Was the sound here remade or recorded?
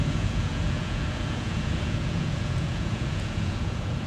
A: remade